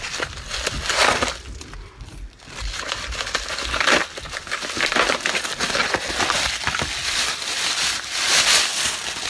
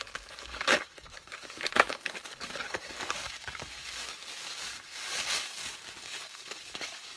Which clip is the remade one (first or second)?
second